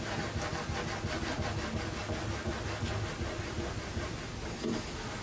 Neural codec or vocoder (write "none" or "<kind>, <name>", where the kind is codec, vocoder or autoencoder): none